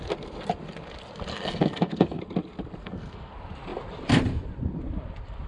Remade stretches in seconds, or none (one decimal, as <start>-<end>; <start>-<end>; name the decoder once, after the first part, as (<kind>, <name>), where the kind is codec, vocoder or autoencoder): 1.3-2.2 (codec, SNAC); 2.8-3.3